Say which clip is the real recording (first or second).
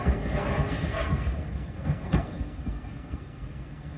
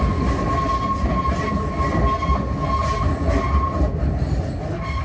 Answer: second